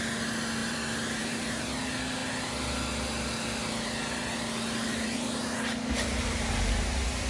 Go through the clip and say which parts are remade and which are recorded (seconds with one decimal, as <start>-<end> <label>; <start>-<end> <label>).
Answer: 0.0-0.6 recorded; 0.6-1.6 remade; 1.6-4.9 recorded; 4.9-5.6 remade; 5.6-7.3 recorded